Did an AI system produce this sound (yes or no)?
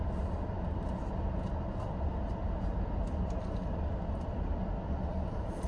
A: no